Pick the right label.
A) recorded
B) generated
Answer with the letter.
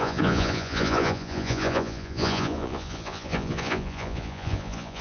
B